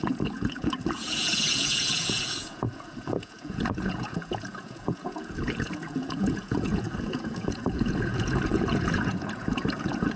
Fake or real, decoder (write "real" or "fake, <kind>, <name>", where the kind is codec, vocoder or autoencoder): fake, vocoder, Vocos